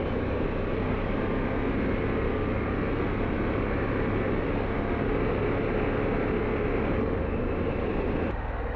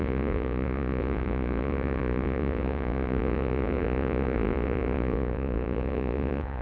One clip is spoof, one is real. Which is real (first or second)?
first